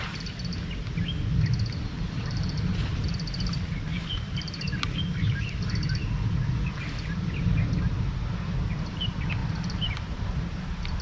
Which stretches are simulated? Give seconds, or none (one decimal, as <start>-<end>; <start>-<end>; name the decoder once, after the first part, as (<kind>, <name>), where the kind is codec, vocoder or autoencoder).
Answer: 3.9-4.6 (vocoder, BigVGAN v2); 9.4-10.6

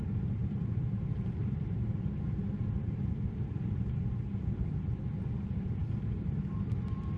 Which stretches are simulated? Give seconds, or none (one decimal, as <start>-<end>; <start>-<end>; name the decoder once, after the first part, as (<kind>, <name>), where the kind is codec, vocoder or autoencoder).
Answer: 0.4-1.8 (vocoder, BigVGAN v2)

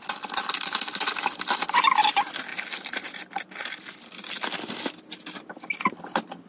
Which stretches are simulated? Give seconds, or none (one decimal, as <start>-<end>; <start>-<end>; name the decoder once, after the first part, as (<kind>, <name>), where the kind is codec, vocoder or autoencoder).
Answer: none

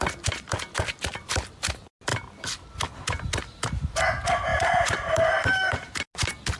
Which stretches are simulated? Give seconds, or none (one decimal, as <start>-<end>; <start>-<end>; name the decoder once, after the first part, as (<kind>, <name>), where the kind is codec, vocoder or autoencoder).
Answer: 4.5-5.9 (vocoder, BigVGAN v2)

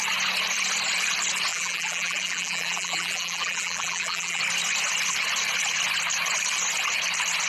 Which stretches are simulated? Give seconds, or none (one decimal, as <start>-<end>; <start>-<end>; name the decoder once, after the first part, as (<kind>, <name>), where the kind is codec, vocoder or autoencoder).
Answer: 1.5-4.4 (vocoder, BigVGAN v2)

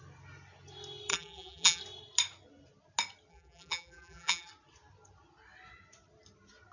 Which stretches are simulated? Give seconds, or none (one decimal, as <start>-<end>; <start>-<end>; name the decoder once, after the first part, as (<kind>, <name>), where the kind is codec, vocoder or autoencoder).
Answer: 1.1-1.8 (vocoder, BigVGAN v2); 3.3-4.5

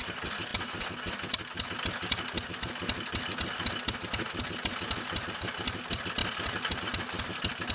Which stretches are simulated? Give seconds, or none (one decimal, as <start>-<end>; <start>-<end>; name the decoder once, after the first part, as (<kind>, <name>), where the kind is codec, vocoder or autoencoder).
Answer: none

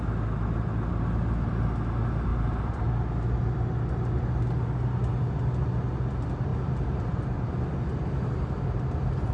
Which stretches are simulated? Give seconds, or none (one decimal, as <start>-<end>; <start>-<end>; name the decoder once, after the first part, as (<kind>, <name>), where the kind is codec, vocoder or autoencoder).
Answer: 2.3-2.9 (vocoder, BigVGAN v2); 6.5-9.3